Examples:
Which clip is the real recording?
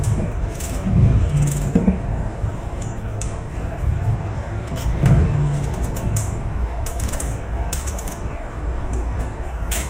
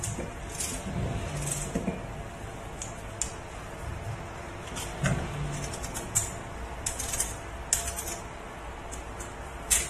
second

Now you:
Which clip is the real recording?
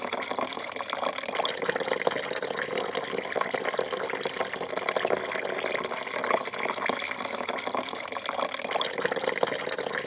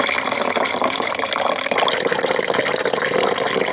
first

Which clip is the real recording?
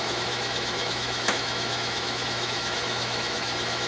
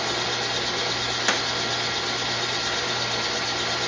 second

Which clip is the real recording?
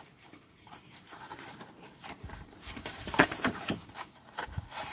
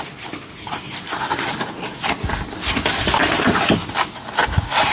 second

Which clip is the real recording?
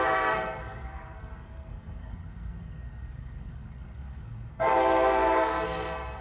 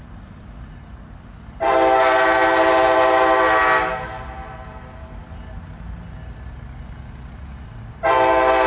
second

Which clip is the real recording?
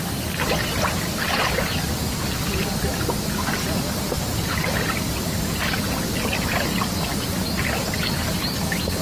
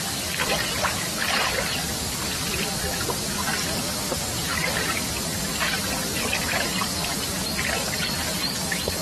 first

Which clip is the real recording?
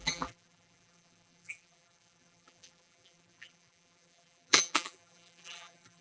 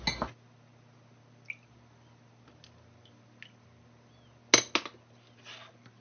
second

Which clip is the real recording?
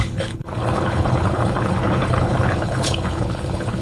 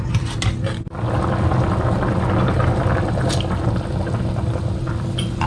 second